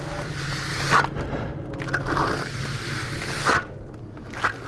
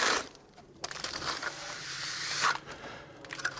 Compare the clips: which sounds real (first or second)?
first